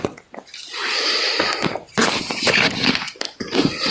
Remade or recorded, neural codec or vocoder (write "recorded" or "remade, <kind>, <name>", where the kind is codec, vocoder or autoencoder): recorded